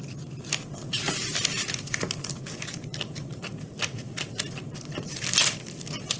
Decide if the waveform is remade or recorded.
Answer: recorded